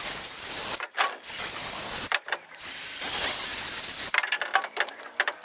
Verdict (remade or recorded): recorded